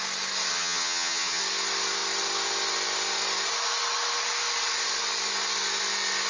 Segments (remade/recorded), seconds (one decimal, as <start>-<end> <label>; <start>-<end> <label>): 0.0-0.5 recorded; 0.5-1.4 remade; 1.4-6.3 recorded